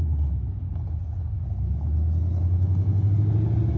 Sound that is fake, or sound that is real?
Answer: real